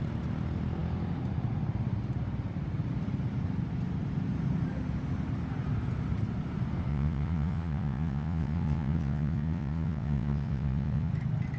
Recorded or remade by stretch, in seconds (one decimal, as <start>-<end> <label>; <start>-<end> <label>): 0.0-6.9 recorded; 6.9-11.1 remade; 11.1-11.6 recorded